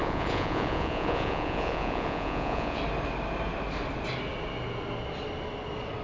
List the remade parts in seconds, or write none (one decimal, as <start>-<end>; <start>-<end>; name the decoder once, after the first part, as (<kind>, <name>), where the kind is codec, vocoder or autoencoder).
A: 0.0-2.8 (vocoder, Vocos)